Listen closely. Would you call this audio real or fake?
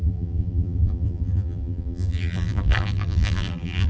fake